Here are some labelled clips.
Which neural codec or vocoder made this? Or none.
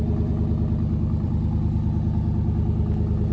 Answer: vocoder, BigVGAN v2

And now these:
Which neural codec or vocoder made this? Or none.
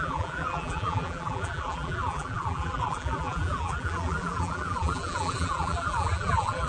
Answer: vocoder, BigVGAN v2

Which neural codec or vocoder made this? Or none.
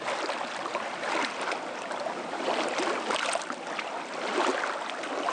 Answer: none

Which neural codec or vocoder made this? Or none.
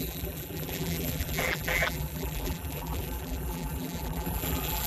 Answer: vocoder, BigVGAN v2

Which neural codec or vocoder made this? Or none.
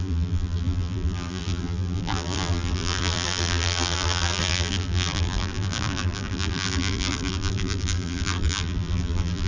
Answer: vocoder, BigVGAN v2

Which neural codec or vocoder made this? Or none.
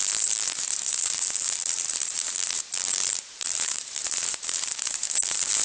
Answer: vocoder, BigVGAN v2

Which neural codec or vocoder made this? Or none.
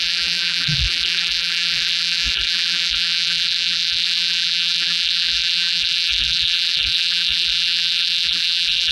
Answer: vocoder, BigVGAN v2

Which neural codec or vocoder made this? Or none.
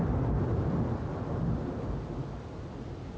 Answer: none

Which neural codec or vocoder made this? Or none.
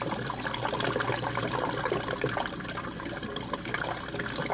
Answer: none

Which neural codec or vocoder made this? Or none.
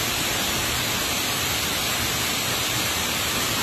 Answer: vocoder, BigVGAN v2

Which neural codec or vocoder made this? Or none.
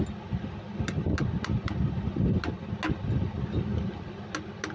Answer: none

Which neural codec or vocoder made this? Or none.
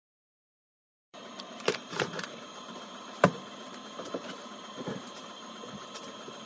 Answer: vocoder, BigVGAN v2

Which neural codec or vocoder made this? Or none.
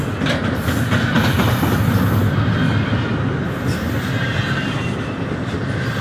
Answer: none